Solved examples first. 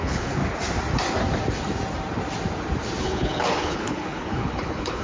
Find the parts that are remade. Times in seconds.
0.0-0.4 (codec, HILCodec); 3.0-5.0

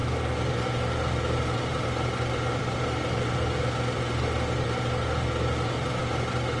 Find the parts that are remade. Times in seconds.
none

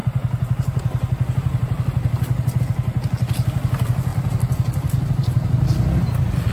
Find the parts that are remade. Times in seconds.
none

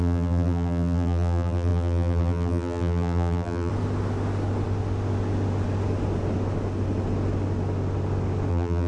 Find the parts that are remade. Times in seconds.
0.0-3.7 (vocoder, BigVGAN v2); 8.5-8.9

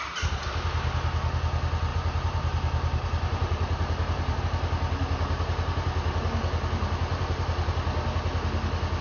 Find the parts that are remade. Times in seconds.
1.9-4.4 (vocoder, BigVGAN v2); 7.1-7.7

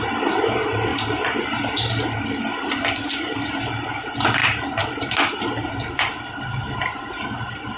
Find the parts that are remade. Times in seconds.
none

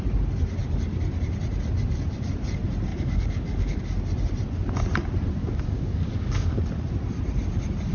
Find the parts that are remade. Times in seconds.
2.9-3.8 (codec, DAC); 5.4-6.6